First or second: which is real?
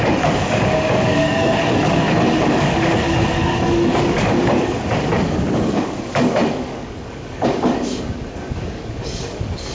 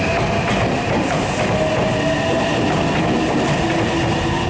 second